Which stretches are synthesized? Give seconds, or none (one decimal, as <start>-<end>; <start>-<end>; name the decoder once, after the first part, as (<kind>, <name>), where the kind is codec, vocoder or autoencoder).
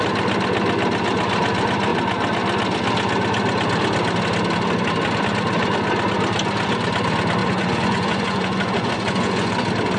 7.4-9.5 (vocoder, Vocos)